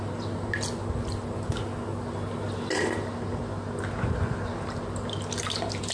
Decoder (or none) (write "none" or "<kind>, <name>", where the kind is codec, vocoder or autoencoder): none